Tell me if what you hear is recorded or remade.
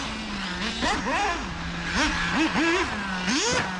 recorded